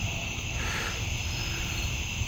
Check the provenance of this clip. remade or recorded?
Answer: recorded